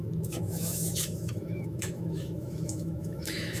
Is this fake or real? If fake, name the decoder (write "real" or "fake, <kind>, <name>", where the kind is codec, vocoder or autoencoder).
fake, autoencoder, DAC-VAE